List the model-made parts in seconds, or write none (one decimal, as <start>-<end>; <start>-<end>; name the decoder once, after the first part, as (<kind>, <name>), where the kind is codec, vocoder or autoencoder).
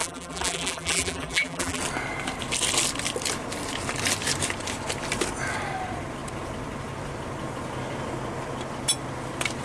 0.0-1.8 (vocoder, BigVGAN v2)